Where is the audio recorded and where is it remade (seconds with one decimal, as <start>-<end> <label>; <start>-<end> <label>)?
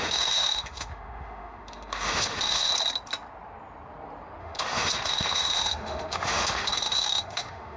0.0-2.7 remade; 2.7-4.4 recorded; 4.4-7.8 remade